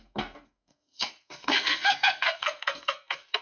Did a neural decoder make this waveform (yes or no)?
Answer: yes